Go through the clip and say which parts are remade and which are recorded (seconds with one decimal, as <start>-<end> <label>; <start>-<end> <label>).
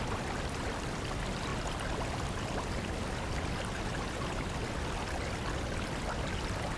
0.0-6.8 recorded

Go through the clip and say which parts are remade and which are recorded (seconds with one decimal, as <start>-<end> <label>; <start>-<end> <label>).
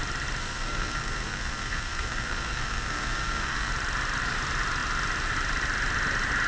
0.0-0.4 recorded; 0.4-3.7 remade; 3.7-6.5 recorded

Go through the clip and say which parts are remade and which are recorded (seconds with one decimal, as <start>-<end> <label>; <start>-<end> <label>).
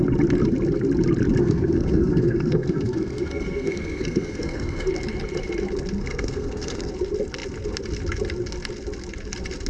0.0-1.4 recorded; 1.4-4.9 remade; 4.9-6.0 recorded; 6.0-6.9 remade; 6.9-9.7 recorded